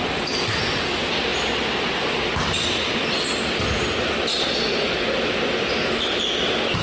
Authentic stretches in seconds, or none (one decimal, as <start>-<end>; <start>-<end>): 0.0-6.8